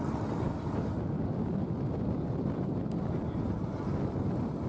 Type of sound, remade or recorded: recorded